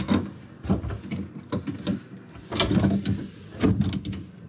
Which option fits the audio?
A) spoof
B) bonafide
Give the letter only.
B